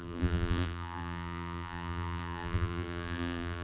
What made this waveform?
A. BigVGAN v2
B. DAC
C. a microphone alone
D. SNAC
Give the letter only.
A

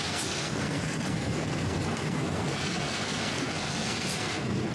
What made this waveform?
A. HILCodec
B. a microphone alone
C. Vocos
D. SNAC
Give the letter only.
D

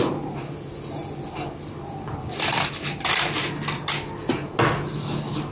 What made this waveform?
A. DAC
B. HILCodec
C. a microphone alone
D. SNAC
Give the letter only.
C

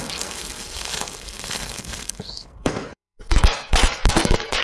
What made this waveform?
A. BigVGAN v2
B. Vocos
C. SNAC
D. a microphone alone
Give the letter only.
C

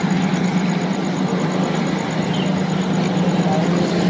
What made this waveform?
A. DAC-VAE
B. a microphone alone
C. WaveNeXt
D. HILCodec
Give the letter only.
B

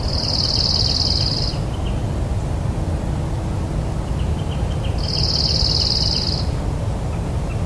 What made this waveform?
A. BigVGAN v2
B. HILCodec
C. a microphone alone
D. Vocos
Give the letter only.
C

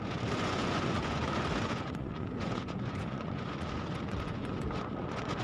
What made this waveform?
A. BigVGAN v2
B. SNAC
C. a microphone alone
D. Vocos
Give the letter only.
D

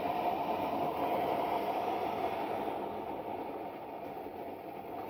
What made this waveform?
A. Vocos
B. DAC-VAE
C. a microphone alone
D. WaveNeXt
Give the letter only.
C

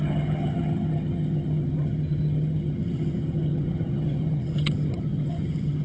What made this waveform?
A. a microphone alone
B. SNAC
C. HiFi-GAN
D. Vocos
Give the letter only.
C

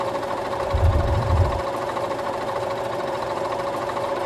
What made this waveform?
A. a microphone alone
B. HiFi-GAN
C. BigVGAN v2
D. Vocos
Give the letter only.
C